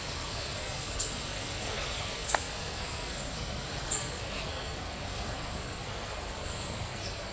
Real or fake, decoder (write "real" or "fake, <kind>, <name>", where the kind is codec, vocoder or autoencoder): fake, codec, SNAC